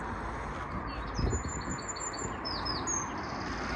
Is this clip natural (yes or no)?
yes